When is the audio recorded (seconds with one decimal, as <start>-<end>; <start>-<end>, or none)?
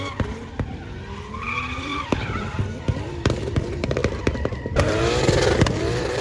0.4-1.3; 4.0-5.8